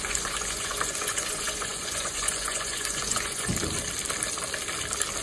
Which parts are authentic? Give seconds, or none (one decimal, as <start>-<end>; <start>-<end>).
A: 3.5-5.2